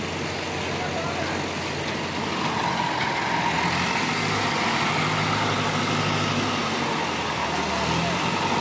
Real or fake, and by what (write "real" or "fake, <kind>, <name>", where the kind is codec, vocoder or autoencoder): real